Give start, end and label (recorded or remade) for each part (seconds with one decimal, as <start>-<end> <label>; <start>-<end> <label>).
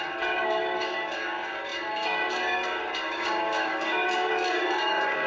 0.0-5.3 remade